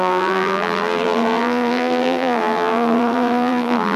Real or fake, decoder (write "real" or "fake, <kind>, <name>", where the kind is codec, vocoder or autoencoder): fake, vocoder, BigVGAN v2